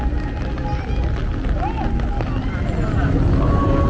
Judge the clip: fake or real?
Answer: real